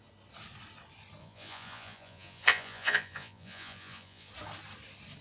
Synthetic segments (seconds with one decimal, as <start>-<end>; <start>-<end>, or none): 1.2-4.3